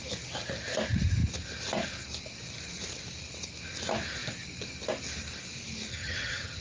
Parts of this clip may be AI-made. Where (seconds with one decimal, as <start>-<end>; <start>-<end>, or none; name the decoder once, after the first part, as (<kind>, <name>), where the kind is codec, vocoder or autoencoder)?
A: 5.9-6.6 (vocoder, HiFi-GAN)